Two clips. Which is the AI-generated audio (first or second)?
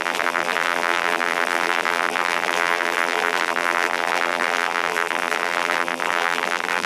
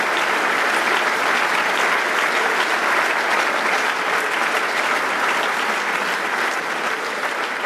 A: first